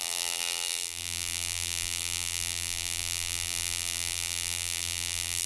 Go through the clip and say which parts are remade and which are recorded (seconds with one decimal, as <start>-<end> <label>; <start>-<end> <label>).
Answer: 0.0-5.5 remade

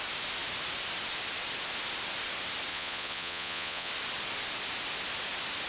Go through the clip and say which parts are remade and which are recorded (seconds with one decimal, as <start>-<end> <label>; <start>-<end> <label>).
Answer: 0.0-2.7 recorded; 2.7-3.9 remade; 3.9-5.7 recorded

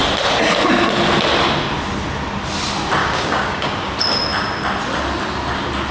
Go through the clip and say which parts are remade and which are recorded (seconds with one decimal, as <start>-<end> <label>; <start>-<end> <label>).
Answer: 0.0-3.0 recorded; 3.0-3.9 remade; 3.9-5.9 recorded

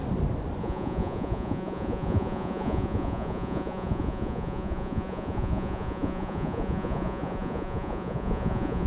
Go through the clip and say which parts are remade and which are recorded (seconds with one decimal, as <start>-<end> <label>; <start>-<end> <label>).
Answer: 0.0-0.6 recorded; 0.6-8.9 remade